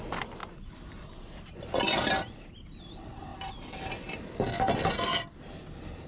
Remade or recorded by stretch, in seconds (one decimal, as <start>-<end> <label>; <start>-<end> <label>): 0.0-6.1 recorded